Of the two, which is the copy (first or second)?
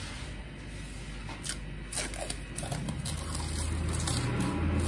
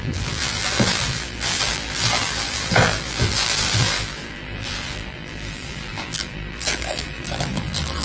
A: second